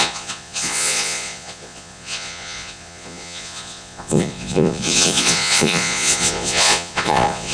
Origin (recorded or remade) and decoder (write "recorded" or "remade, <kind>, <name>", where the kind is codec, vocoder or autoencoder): remade, vocoder, Vocos